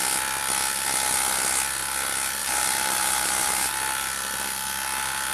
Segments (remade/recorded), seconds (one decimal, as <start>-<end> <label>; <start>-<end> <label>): 0.0-2.4 recorded; 2.4-3.7 remade; 3.7-5.3 recorded